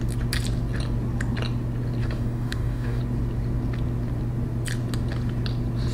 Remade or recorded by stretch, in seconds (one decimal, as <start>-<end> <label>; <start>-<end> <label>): 0.0-2.0 recorded; 2.0-3.0 remade; 3.0-5.9 recorded